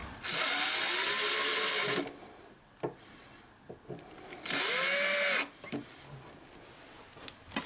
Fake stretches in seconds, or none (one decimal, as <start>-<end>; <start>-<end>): none